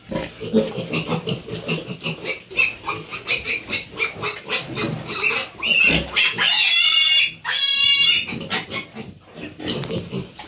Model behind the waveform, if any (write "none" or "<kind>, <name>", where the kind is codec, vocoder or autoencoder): none